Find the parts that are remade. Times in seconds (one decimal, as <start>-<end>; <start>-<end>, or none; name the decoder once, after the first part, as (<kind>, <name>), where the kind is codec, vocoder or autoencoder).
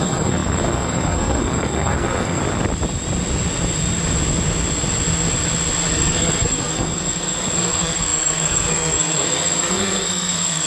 0.0-2.4 (codec, SNAC); 5.9-10.7